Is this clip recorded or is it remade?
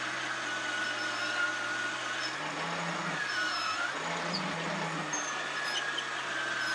recorded